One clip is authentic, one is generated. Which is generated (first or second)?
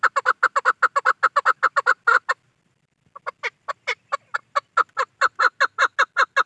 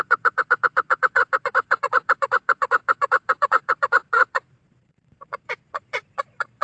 second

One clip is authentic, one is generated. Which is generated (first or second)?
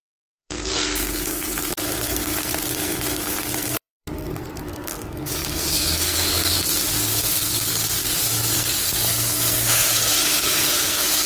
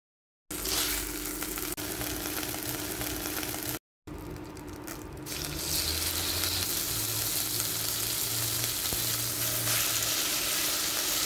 first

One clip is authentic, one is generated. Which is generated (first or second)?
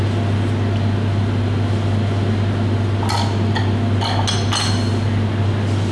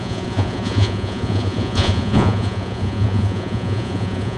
second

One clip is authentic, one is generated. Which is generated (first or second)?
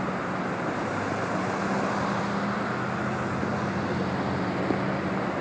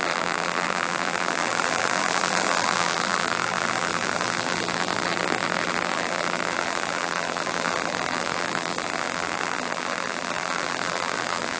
second